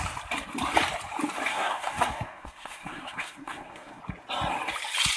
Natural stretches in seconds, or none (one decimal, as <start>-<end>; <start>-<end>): 0.0-1.5; 4.0-5.2